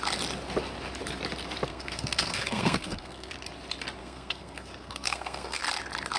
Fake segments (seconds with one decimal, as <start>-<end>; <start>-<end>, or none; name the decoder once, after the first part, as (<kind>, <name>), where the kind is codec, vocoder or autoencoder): 1.7-3.3 (codec, SNAC); 4.0-5.6